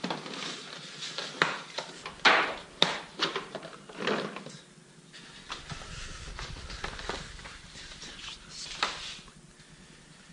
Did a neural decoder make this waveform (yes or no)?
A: no